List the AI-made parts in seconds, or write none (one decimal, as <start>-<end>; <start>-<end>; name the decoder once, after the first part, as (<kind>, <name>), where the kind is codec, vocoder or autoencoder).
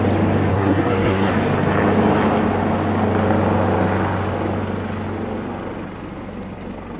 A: 0.5-1.3 (codec, SNAC)